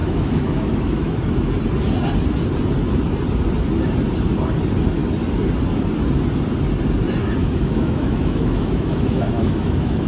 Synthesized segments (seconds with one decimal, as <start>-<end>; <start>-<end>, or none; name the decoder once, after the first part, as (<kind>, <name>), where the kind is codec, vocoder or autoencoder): 0.0-1.2 (autoencoder, DAC-VAE); 7.4-10.1